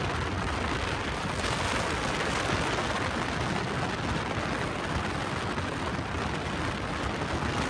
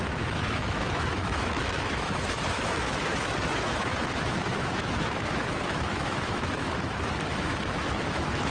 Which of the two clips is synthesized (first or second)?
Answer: second